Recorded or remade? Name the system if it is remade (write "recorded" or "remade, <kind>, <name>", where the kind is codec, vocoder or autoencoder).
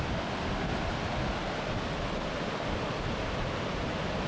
recorded